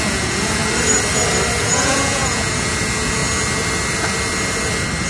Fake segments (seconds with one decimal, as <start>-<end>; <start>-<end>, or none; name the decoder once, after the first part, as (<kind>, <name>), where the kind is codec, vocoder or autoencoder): 0.0-0.6 (vocoder, Vocos); 1.6-3.2